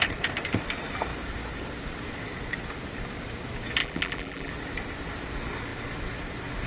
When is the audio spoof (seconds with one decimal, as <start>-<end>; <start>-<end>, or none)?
3.8-4.5